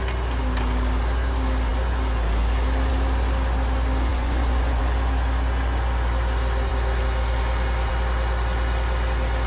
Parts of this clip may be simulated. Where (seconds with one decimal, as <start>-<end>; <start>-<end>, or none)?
4.1-4.8